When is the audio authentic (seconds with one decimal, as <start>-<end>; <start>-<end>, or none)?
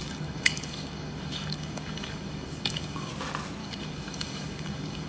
3.1-3.6